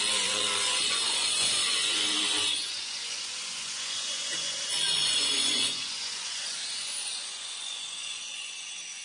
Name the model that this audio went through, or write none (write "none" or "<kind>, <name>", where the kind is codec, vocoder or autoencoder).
vocoder, Vocos